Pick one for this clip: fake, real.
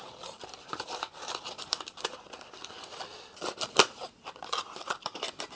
fake